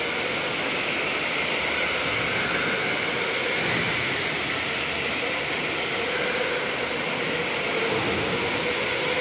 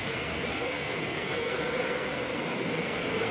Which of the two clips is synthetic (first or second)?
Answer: second